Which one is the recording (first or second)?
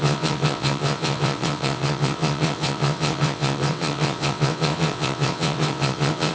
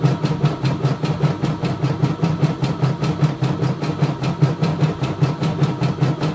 second